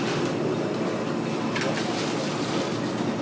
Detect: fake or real real